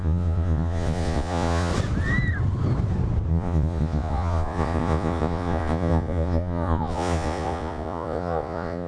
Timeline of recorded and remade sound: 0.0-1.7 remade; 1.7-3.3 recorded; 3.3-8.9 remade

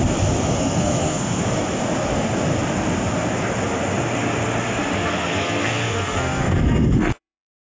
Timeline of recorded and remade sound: 0.0-0.5 recorded; 0.5-1.4 remade; 1.4-5.1 recorded; 5.1-7.6 remade

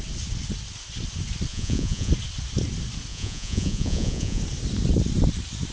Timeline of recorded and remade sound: 0.0-1.5 recorded; 1.5-2.1 remade; 2.1-3.1 recorded; 3.1-4.4 remade; 4.4-5.7 recorded

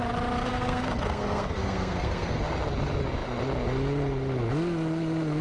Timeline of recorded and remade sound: 0.0-0.5 recorded; 0.5-2.4 remade; 2.4-5.4 recorded